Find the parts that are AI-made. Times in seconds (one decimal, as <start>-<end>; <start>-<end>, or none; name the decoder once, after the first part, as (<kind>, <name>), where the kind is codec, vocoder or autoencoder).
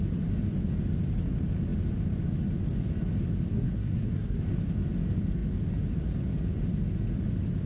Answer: 3.5-4.4 (codec, SNAC)